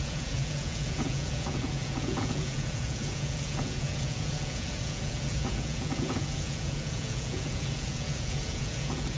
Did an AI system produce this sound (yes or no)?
yes